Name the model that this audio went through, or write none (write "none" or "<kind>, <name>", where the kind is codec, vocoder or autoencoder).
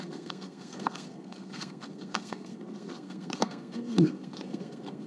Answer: codec, SNAC